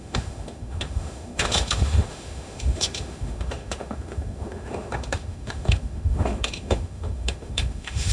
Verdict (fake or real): fake